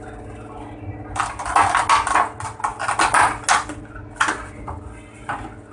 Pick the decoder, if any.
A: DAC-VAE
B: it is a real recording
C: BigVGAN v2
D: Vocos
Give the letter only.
B